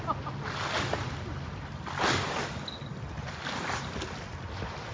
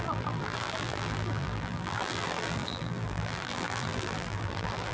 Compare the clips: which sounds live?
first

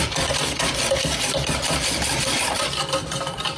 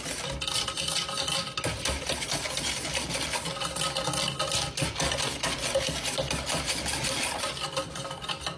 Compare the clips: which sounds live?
second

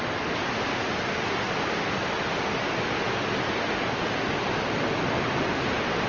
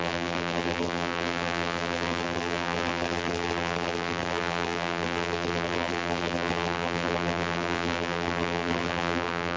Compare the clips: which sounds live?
first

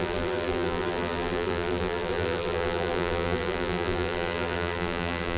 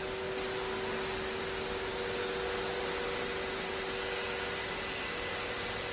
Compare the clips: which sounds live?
second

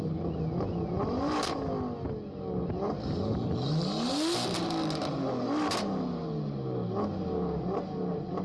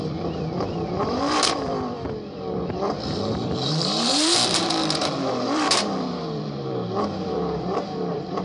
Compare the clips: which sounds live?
first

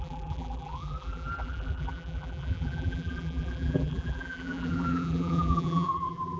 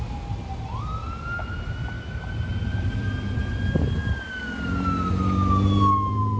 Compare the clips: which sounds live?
second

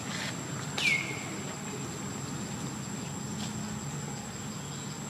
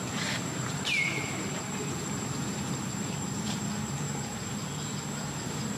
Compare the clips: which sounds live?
first